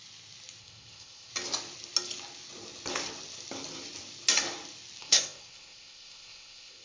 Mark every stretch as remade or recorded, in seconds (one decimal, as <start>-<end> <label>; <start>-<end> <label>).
0.0-0.6 recorded; 0.6-1.3 remade; 1.3-5.0 recorded; 5.0-6.8 remade